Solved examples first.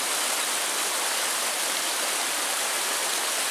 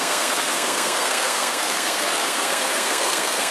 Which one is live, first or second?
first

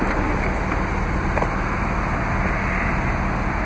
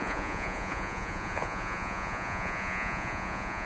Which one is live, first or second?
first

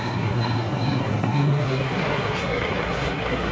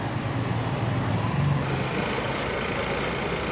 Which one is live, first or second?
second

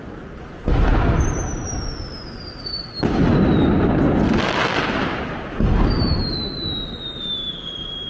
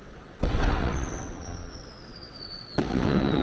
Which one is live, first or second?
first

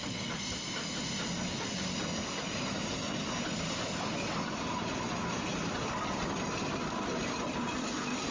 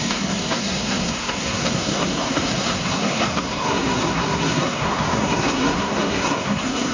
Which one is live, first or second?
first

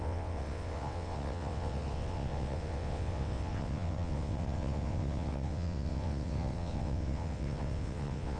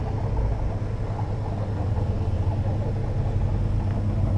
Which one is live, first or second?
second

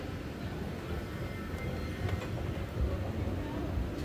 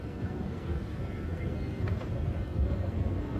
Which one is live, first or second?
first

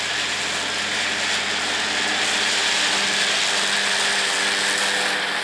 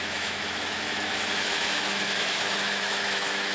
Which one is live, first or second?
first